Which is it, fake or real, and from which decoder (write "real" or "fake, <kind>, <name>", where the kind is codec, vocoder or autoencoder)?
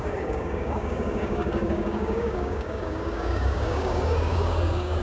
fake, codec, DAC